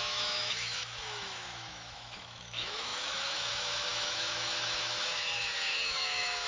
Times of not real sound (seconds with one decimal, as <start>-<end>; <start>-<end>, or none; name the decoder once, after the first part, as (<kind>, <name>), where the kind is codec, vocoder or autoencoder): 0.0-6.5 (autoencoder, DAC-VAE)